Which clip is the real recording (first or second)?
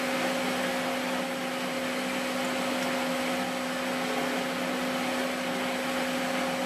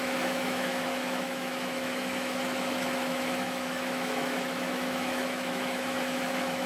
first